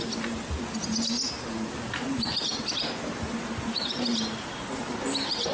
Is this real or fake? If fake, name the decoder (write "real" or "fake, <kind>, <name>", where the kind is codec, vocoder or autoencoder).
real